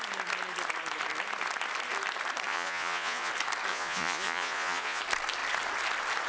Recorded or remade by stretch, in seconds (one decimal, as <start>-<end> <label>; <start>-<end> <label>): 0.0-2.5 recorded; 2.5-3.3 remade; 3.3-3.7 recorded; 3.7-5.0 remade; 5.0-6.3 recorded